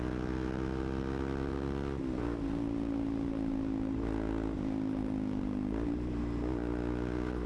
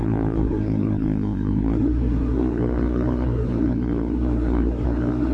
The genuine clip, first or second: first